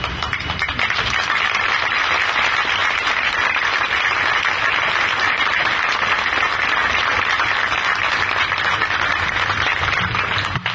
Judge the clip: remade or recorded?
recorded